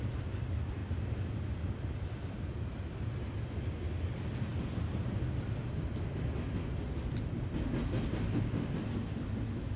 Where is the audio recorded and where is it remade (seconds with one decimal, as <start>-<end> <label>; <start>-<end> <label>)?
0.0-9.8 recorded